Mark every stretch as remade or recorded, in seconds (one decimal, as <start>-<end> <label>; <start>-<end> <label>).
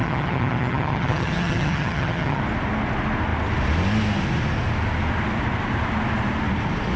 0.0-2.4 remade; 2.4-7.0 recorded